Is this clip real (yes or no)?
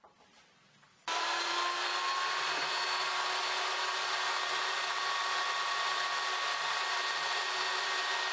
no